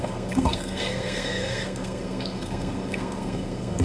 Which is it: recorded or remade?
remade